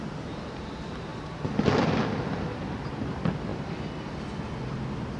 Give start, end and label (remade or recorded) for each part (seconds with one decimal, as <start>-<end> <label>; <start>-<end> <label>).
0.0-5.2 recorded